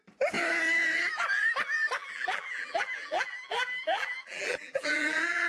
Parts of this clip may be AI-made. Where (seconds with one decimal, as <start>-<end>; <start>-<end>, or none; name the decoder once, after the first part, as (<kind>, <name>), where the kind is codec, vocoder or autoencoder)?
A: 2.0-5.5 (vocoder, BigVGAN v2)